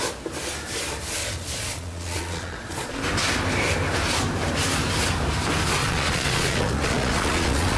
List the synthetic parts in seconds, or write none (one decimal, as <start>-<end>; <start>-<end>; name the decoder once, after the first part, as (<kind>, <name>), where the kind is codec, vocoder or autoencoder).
1.2-3.0 (vocoder, Vocos); 5.8-7.8

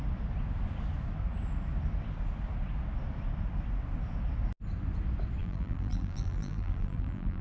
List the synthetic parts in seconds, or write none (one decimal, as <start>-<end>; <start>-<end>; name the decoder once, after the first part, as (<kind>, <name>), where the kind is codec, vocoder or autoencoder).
5.4-7.4 (vocoder, BigVGAN v2)